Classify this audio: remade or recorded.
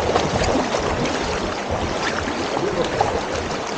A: recorded